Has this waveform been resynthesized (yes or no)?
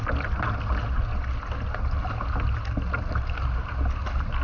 no